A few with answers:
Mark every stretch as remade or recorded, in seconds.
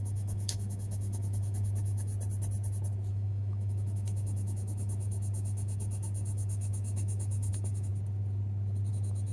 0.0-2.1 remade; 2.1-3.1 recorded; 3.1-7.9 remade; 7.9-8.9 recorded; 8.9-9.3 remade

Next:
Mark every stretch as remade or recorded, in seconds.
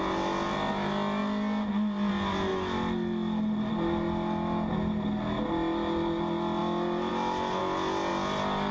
0.0-8.7 recorded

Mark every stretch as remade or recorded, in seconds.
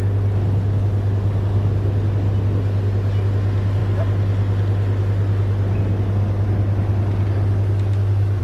0.0-8.4 recorded